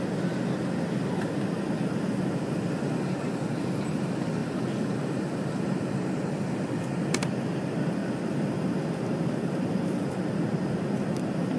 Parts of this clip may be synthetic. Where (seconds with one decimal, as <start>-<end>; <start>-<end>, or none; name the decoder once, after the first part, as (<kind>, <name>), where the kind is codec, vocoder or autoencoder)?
4.4-7.4 (vocoder, BigVGAN v2); 8.0-10.5